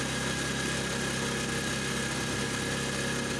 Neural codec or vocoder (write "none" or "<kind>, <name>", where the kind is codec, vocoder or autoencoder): none